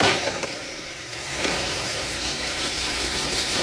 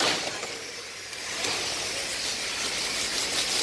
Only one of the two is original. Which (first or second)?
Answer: second